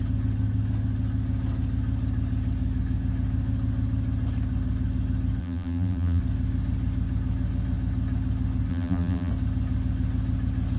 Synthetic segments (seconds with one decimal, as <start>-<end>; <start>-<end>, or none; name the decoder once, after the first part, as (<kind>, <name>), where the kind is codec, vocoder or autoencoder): 5.4-6.2 (vocoder, BigVGAN v2); 8.7-9.3